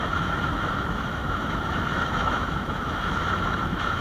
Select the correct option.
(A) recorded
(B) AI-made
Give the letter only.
B